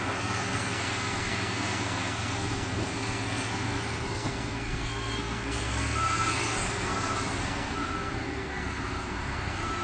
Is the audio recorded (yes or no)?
no